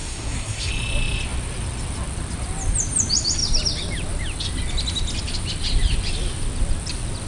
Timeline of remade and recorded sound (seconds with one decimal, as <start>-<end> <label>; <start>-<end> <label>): 0.0-0.7 remade; 0.7-7.3 recorded